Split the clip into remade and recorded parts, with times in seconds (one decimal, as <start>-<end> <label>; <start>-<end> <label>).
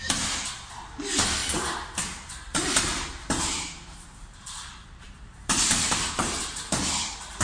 0.0-1.4 recorded; 1.4-1.9 remade; 1.9-2.5 recorded; 2.5-6.7 remade; 6.7-7.4 recorded